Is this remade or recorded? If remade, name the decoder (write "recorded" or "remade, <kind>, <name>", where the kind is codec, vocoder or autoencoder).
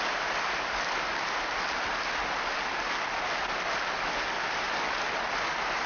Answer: recorded